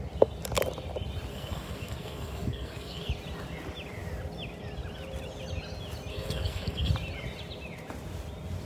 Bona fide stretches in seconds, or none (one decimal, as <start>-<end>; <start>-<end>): 0.0-1.3; 3.1-6.1; 6.9-8.7